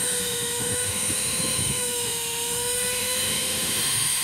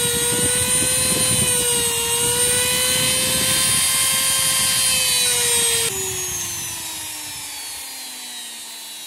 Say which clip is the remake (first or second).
first